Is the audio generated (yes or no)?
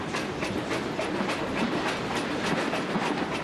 no